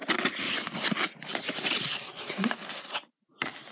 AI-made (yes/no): no